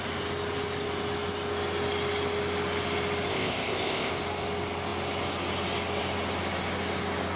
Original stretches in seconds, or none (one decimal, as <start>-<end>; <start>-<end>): 0.0-3.3; 4.1-7.4